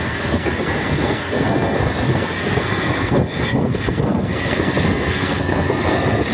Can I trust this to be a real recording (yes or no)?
no